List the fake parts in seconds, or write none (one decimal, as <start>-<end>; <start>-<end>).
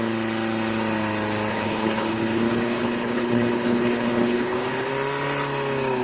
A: 1.5-4.9